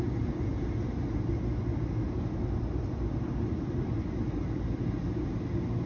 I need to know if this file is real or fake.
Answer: real